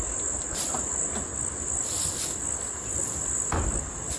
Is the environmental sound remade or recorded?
recorded